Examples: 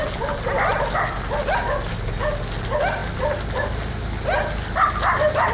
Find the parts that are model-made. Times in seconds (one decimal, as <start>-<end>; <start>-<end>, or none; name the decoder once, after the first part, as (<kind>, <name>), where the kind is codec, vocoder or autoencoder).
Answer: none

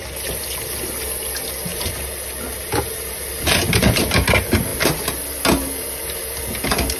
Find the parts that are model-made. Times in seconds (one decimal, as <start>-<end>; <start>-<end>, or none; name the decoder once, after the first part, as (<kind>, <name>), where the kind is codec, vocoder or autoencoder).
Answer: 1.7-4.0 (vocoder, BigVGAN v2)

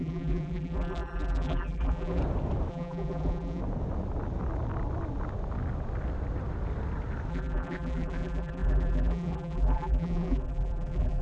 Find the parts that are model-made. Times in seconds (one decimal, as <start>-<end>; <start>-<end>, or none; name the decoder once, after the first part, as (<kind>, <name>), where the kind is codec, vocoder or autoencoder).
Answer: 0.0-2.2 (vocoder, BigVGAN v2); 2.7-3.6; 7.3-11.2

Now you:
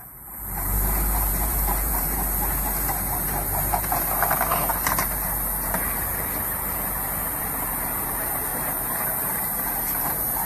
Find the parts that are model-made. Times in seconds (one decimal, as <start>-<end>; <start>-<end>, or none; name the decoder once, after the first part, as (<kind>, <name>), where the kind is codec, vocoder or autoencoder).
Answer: 0.0-10.4 (vocoder, BigVGAN v2)

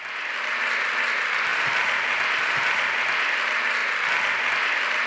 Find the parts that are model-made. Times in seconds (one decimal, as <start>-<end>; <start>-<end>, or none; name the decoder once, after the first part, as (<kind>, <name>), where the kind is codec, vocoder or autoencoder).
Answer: 1.5-3.0 (vocoder, BigVGAN v2)

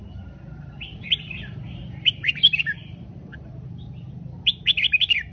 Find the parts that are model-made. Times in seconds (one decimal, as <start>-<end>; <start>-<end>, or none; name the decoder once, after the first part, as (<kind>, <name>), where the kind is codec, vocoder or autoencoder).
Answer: 0.9-4.1 (vocoder, BigVGAN v2)